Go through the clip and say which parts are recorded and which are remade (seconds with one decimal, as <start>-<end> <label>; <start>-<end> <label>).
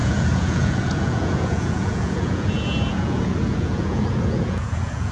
0.0-5.1 remade